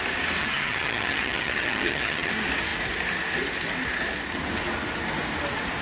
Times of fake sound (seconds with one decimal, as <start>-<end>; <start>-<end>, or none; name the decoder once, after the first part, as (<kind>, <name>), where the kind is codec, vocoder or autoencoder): 0.4-2.3 (vocoder, HiFi-GAN)